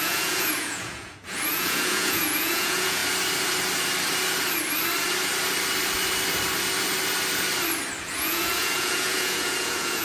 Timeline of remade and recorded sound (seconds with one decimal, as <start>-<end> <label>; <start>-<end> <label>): 0.0-3.0 remade; 3.0-8.0 recorded; 8.0-10.0 remade